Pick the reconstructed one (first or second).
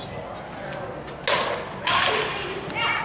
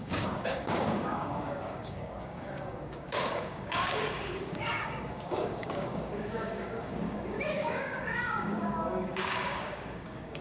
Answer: second